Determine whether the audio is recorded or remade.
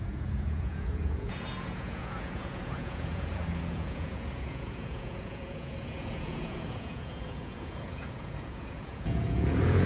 remade